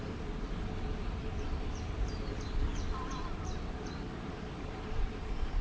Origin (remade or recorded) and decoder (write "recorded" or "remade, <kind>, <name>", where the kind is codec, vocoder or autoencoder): remade, vocoder, BigVGAN v2